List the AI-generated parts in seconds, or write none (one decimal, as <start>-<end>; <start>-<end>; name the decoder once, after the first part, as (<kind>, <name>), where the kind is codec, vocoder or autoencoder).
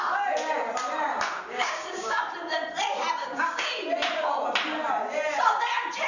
1.5-2.2 (codec, DAC); 3.2-3.7